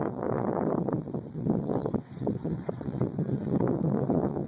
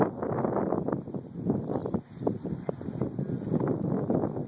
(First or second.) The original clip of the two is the second